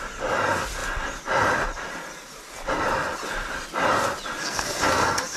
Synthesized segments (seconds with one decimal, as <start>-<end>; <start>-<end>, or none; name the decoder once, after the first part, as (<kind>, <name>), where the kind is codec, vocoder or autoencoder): 4.4-5.4 (codec, SNAC)